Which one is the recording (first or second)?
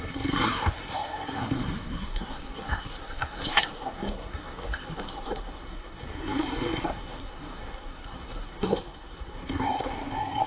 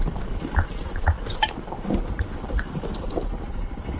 second